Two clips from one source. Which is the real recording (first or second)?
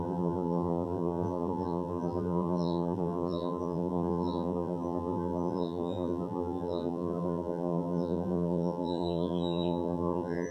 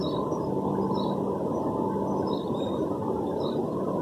second